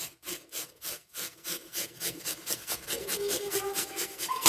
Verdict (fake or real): fake